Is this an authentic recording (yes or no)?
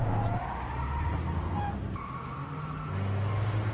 yes